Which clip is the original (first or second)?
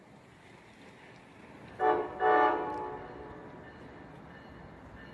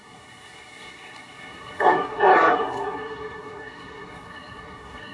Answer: first